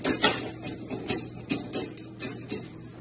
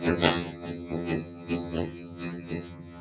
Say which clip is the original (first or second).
first